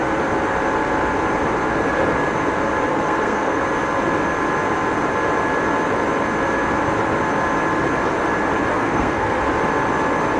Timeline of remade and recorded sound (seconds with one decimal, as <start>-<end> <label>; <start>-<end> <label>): 0.0-2.9 recorded; 2.9-3.6 remade; 3.6-8.7 recorded; 8.7-9.4 remade; 9.4-10.4 recorded